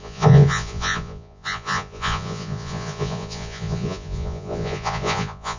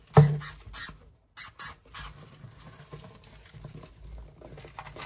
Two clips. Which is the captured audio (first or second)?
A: second